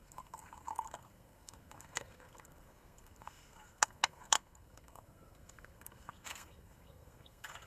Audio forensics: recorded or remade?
remade